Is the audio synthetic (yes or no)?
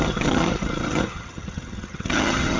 yes